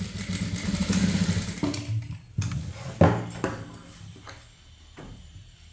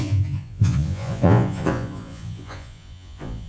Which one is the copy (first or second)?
second